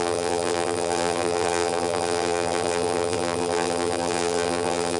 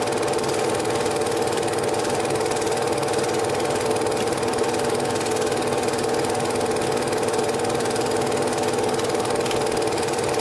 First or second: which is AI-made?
first